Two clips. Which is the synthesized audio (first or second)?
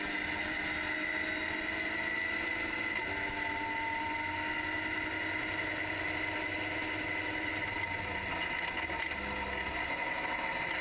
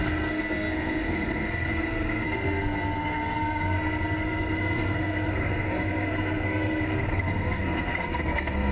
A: second